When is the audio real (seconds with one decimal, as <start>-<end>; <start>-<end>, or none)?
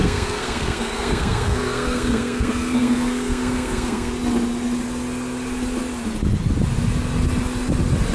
4.1-8.1